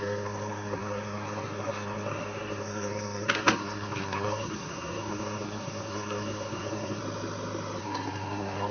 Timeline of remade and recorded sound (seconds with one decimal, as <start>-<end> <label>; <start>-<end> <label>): 0.0-7.0 remade; 7.0-7.8 recorded; 7.8-8.7 remade